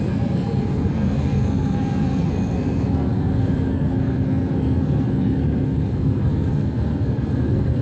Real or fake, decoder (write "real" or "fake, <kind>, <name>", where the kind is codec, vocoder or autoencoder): fake, codec, SNAC